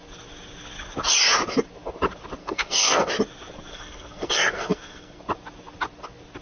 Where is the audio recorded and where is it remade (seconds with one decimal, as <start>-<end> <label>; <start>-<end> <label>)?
0.0-2.4 recorded; 2.4-3.1 remade; 3.1-3.7 recorded; 3.7-5.2 remade; 5.2-6.4 recorded